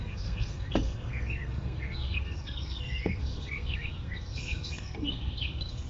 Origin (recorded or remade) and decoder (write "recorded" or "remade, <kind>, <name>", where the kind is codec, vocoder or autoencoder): remade, codec, SNAC